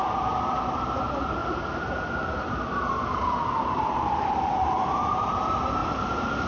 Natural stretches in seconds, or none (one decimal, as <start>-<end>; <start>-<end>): 0.0-1.4; 5.3-5.8